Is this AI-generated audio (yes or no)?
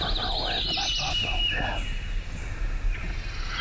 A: no